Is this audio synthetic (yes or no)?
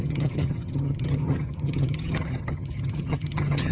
yes